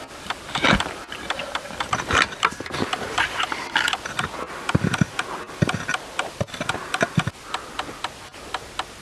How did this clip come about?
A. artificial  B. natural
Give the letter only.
B